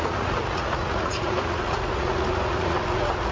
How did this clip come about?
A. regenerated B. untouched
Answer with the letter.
A